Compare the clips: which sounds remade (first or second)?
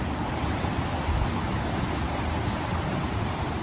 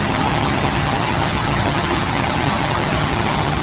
second